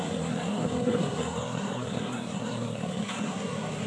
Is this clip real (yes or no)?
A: no